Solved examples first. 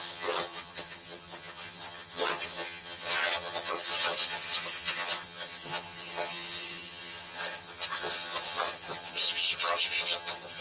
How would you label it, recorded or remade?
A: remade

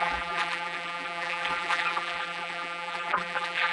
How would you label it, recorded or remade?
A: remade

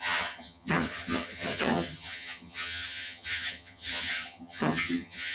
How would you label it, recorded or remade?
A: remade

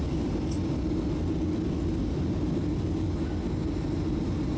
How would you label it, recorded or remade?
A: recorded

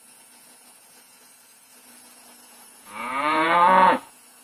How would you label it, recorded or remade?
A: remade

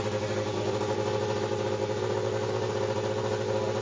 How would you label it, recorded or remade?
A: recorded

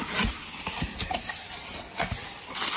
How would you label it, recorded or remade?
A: recorded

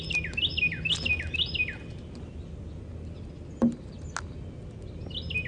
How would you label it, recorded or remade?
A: recorded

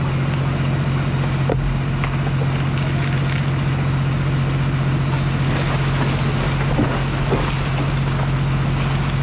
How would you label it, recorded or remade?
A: recorded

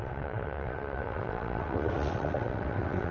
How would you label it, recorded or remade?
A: remade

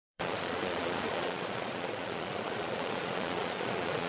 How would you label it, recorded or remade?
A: remade